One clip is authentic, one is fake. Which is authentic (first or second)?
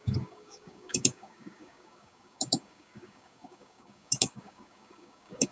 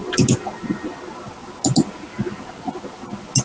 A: second